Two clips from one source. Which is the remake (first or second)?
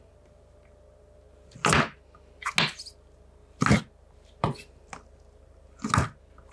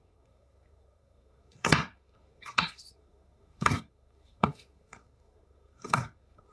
second